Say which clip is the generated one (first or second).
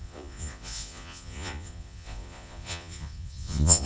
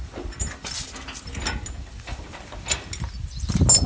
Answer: first